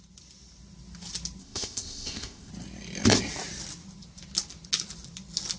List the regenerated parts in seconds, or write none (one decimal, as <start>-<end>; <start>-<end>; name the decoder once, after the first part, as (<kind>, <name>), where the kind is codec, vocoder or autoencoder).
1.4-2.5 (codec, ZipCodec)